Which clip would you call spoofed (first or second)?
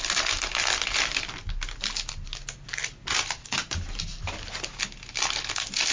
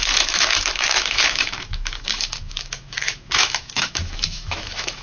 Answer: second